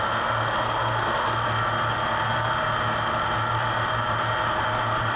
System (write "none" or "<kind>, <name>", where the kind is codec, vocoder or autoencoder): none